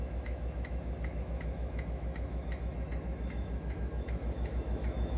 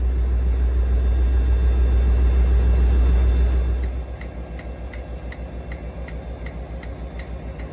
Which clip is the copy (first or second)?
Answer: first